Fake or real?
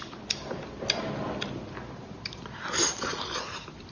real